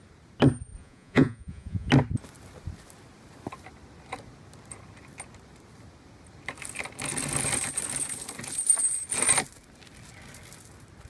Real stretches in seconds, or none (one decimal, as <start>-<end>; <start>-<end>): 0.0-0.8; 1.9-11.1